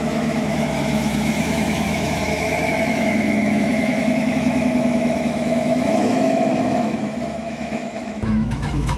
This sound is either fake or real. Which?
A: fake